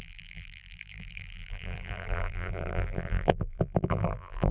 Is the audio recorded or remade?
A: remade